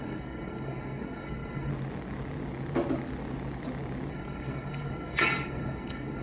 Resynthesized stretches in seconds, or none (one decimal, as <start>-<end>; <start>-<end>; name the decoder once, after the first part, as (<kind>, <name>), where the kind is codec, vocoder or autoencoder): 0.0-1.7 (codec, SNAC); 4.1-6.2